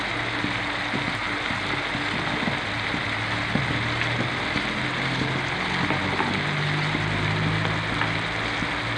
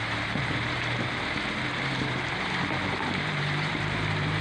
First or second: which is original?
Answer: first